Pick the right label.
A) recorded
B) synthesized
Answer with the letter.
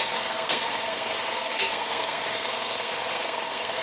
B